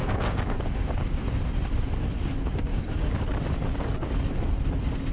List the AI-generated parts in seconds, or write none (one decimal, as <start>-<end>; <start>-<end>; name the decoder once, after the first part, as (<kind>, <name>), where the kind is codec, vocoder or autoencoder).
0.0-0.9 (codec, DAC); 2.7-3.3